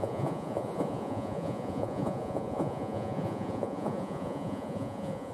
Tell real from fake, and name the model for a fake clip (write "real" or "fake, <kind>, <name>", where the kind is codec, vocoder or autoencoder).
fake, vocoder, Vocos